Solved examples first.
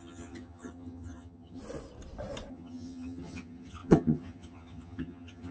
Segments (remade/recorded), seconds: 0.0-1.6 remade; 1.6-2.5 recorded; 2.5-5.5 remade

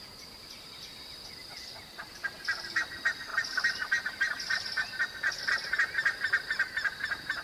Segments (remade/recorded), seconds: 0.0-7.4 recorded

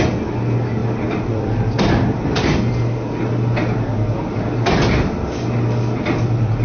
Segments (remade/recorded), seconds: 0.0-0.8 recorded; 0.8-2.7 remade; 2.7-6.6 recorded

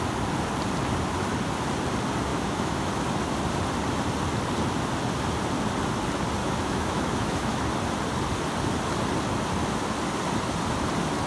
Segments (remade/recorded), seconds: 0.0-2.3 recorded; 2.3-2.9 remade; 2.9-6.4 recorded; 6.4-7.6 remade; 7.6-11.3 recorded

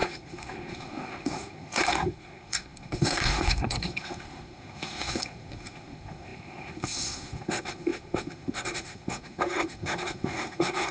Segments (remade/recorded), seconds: 0.0-10.9 remade

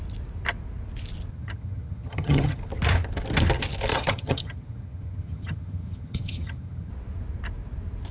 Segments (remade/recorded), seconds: 0.0-1.3 recorded; 1.3-2.6 remade; 2.6-3.9 recorded; 3.9-6.9 remade; 6.9-8.1 recorded

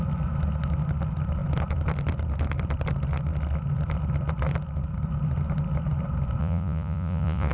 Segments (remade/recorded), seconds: 0.0-6.4 recorded; 6.4-7.5 remade

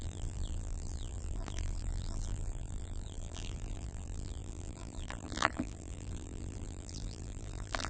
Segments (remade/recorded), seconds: 0.0-7.9 remade